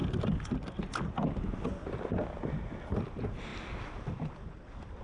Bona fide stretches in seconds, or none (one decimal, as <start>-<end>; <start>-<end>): 0.0-5.0